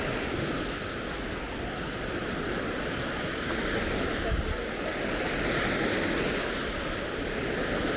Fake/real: real